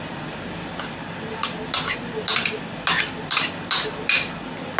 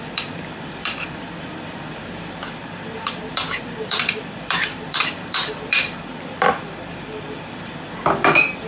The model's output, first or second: second